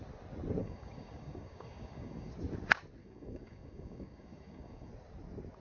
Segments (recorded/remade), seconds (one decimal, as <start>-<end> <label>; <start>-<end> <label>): 0.0-0.6 recorded; 0.6-2.3 remade; 2.3-3.0 recorded; 3.0-4.9 remade; 4.9-5.6 recorded